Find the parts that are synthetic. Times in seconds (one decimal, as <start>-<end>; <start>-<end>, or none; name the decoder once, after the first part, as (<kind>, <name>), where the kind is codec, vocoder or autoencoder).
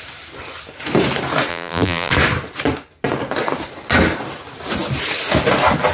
1.5-2.1 (vocoder, BigVGAN v2)